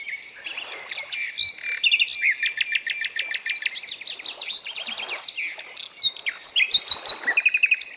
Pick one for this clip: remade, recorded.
recorded